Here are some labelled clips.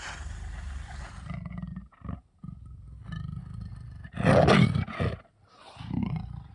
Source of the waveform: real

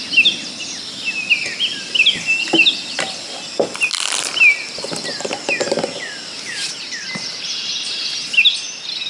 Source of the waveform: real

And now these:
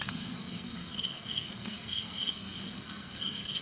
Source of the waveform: fake